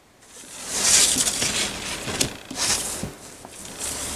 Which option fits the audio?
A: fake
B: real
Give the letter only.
B